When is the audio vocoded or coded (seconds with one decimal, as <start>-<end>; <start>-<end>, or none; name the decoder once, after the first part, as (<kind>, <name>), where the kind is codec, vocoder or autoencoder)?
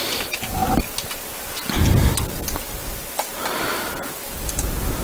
none